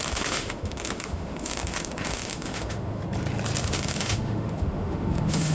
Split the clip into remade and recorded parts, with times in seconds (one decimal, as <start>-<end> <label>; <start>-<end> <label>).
0.0-3.0 remade; 3.0-3.6 recorded; 3.6-5.5 remade